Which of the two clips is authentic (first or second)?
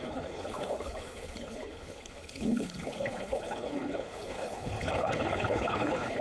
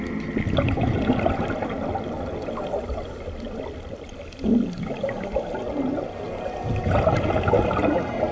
second